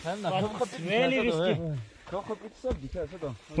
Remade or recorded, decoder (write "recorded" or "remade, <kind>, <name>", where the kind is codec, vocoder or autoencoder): recorded